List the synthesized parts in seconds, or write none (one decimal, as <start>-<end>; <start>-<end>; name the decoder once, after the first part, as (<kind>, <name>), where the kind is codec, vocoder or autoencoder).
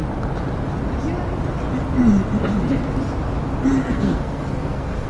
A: 3.8-5.1 (codec, SNAC)